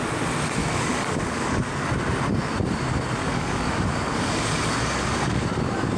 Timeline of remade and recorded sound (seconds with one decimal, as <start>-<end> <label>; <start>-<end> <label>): 0.0-0.6 recorded; 0.6-1.7 remade; 1.7-3.2 recorded; 3.2-5.6 remade; 5.6-6.0 recorded